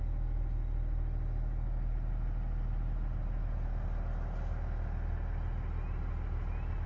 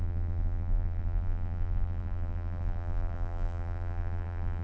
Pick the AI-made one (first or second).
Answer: second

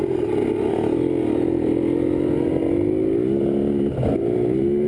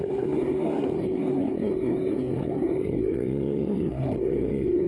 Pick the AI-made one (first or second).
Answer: second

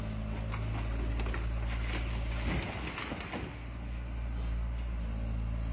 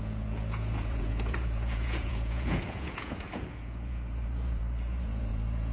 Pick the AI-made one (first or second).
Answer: second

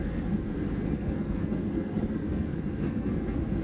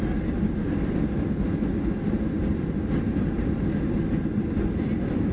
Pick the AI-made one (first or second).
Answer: first